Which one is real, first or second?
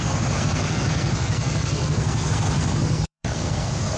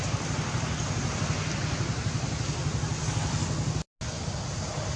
second